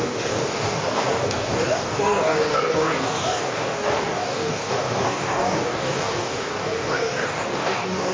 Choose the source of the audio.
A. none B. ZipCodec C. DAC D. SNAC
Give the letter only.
C